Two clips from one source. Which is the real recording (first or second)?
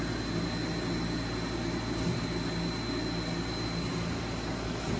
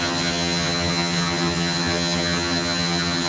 first